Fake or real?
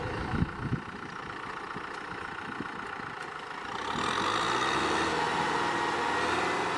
real